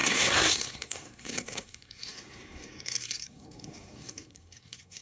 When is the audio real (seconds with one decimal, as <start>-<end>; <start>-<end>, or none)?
none